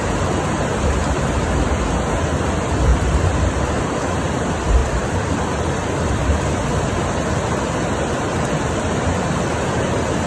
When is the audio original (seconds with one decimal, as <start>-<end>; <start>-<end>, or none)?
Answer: 0.0-2.9; 3.8-4.8; 6.4-10.3

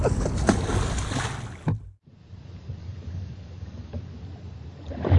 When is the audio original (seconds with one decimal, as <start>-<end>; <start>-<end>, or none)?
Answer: 0.0-2.8; 4.0-5.2

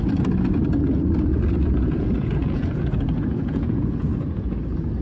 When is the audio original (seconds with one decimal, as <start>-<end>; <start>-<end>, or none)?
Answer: 0.0-1.6; 4.6-5.0

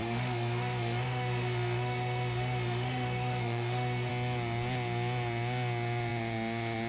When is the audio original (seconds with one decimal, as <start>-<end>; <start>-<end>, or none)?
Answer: 4.1-6.9

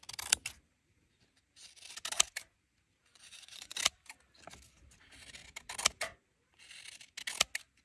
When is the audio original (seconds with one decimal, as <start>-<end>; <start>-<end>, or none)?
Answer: 0.0-3.1; 3.8-7.8

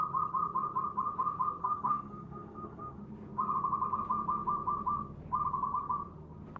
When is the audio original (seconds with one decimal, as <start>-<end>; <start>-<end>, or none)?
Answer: 0.0-1.6; 3.0-6.6

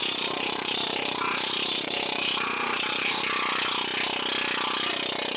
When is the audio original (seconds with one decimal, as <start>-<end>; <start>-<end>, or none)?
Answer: 3.2-5.4

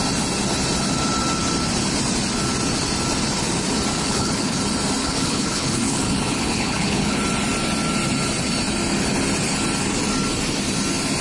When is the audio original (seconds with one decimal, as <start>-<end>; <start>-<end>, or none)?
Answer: 0.0-3.9; 4.6-5.0; 7.2-11.2